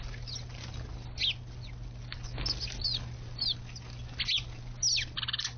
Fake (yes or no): no